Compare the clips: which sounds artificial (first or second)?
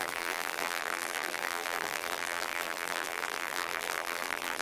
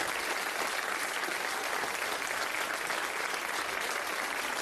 first